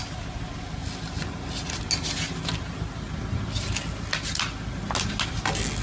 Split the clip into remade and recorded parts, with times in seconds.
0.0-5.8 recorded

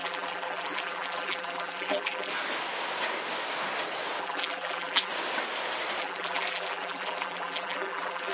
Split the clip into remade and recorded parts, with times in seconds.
0.0-2.3 remade; 2.3-4.2 recorded; 4.2-5.1 remade; 5.1-6.0 recorded; 6.0-8.3 remade

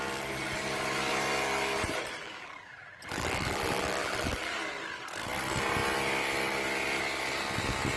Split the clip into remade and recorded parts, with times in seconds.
0.0-2.2 recorded; 2.2-4.5 remade; 4.5-8.0 recorded

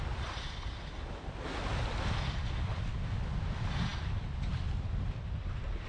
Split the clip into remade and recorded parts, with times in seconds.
0.0-5.9 recorded